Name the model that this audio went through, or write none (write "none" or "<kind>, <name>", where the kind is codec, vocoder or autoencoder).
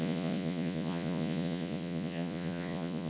vocoder, Vocos